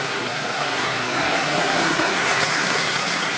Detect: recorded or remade remade